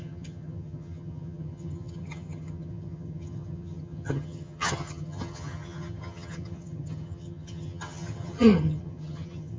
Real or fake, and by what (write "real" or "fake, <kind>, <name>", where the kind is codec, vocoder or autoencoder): fake, vocoder, HiFi-GAN